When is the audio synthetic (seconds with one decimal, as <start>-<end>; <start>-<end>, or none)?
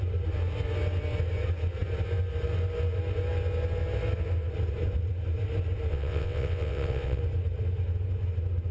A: 5.9-7.2